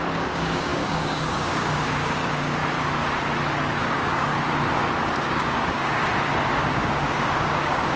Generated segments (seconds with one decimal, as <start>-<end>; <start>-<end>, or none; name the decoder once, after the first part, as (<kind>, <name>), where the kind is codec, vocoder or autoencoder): 0.0-2.6 (codec, DAC); 3.8-4.3; 5.2-6.0; 6.5-8.0